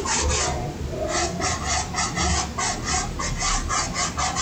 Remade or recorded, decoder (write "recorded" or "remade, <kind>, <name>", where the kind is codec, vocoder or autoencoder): recorded